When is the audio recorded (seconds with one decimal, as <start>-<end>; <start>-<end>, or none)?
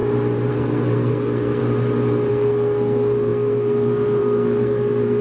0.0-0.5; 1.6-2.3